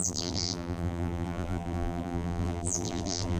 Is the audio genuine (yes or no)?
no